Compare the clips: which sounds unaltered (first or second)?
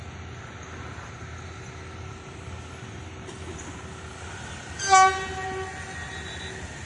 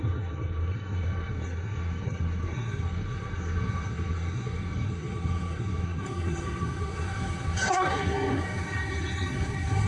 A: first